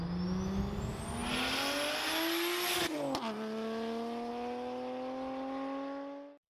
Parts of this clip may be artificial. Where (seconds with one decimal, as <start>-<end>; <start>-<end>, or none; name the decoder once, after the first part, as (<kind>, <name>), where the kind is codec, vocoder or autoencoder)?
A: none